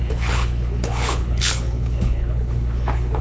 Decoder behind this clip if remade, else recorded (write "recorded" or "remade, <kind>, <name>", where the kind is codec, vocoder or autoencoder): remade, codec, HILCodec